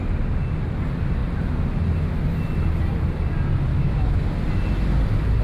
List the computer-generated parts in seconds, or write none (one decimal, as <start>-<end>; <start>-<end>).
3.7-4.2